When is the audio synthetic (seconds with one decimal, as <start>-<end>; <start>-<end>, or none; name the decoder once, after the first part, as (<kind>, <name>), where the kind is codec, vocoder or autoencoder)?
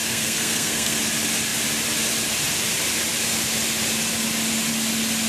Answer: 0.0-1.0 (codec, SNAC)